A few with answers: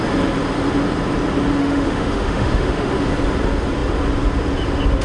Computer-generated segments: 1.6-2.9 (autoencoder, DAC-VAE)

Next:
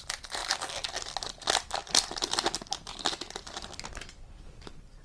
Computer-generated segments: none

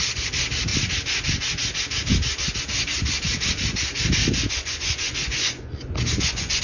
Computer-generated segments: 4.2-6.6 (vocoder, Vocos)

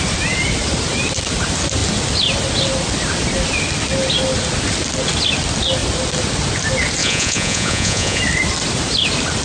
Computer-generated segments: 7.0-8.2 (vocoder, Vocos)

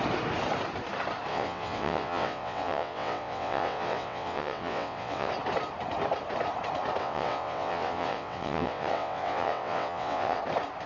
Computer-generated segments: 1.3-5.3 (vocoder, WaveNeXt); 7.0-10.4

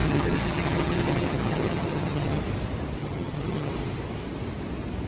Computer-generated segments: 0.0-2.4 (vocoder, HiFi-GAN); 3.0-3.7